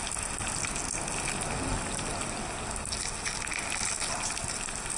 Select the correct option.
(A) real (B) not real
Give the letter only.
A